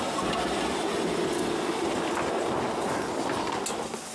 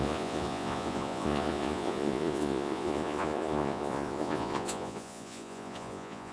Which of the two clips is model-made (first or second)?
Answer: second